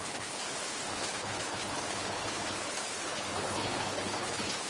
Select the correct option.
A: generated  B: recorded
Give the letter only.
A